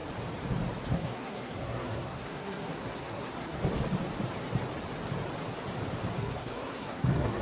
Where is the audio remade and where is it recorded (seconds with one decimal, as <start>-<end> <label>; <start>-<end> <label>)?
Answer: 0.0-0.9 recorded; 0.9-3.6 remade; 3.6-6.2 recorded; 6.2-7.4 remade